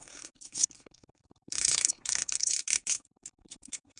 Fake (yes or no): yes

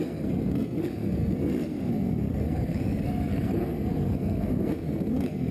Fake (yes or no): yes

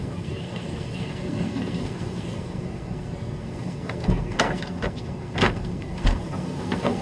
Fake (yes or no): yes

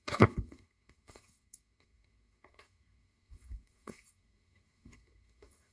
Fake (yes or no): yes